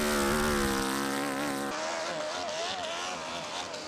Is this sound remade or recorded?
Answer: recorded